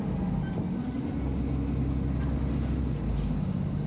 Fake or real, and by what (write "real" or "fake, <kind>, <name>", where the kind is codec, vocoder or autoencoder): real